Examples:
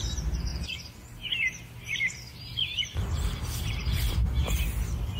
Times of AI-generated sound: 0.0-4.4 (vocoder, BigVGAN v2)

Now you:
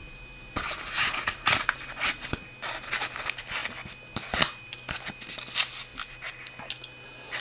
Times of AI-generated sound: none

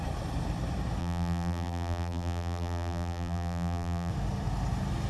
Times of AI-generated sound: 1.0-4.1 (vocoder, BigVGAN v2)